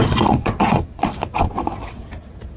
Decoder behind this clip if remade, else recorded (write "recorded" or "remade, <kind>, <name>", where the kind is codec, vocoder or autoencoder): remade, vocoder, Vocos